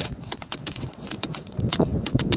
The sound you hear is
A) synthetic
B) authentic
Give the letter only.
A